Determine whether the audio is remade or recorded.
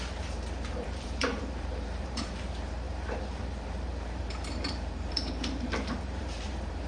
remade